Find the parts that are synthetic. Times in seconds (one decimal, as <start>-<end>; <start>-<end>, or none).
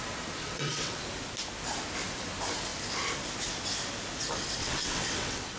0.4-1.0; 4.6-5.6